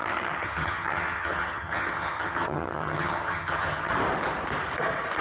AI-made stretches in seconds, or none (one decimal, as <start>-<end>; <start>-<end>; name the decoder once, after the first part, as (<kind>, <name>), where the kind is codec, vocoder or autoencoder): 0.0-3.9 (vocoder, HiFi-GAN)